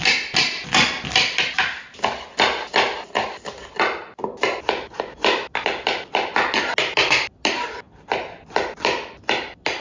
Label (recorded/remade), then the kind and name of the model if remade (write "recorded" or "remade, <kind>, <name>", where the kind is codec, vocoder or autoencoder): recorded